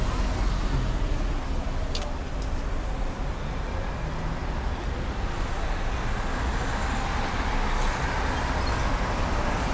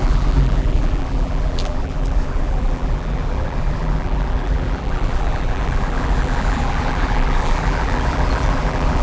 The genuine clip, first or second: first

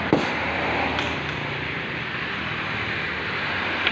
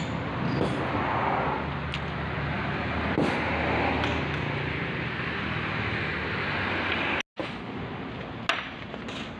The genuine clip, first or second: second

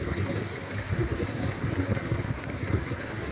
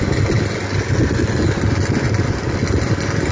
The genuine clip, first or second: second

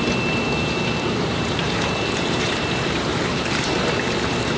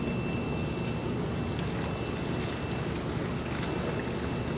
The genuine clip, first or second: second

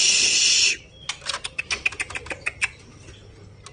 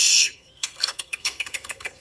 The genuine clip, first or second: first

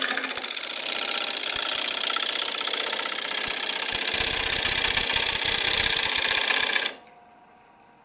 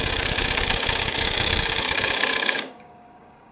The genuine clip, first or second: first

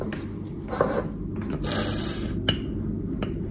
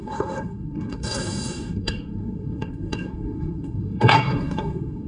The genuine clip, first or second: first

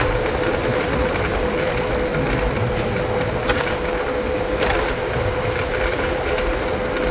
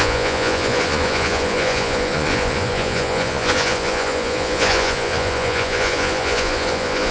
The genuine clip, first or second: first